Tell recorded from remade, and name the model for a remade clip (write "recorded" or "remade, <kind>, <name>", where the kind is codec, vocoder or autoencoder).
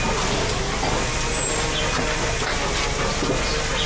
recorded